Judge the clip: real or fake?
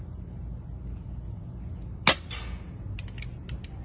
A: real